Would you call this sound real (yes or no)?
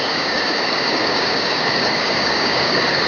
no